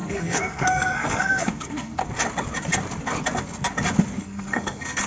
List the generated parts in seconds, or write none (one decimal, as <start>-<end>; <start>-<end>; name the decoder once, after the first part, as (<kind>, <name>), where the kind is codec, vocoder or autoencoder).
0.0-2.0 (codec, SNAC); 4.2-5.1